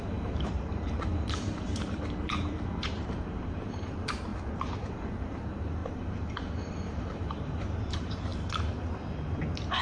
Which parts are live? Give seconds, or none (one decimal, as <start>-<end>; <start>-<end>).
4.3-4.9; 8.3-9.8